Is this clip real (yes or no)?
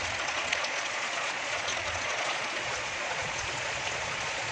no